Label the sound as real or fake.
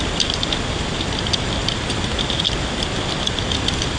fake